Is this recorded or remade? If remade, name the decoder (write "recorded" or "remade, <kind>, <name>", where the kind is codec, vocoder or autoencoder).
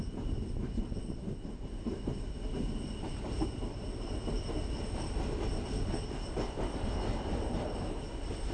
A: recorded